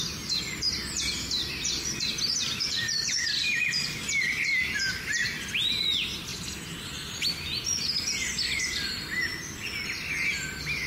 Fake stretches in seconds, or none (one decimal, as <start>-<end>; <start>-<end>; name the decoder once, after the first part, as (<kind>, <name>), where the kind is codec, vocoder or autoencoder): 1.4-4.9 (vocoder, BigVGAN v2); 6.3-7.6